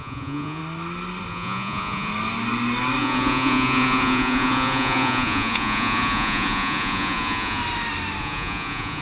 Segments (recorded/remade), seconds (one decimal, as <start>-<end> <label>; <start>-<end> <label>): 0.0-0.6 remade; 0.6-1.3 recorded; 1.3-2.1 remade; 2.1-3.0 recorded; 3.0-7.6 remade; 7.6-8.2 recorded; 8.2-9.0 remade